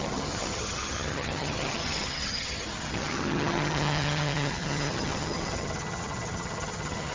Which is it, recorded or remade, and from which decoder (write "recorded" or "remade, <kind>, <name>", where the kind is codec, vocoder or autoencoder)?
remade, vocoder, HiFi-GAN